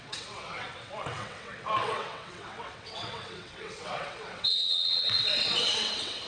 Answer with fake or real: fake